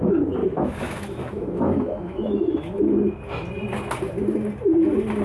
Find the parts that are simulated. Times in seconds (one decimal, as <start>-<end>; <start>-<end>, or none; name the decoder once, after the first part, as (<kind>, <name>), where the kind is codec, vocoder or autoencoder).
0.4-2.8 (autoencoder, DAC-VAE)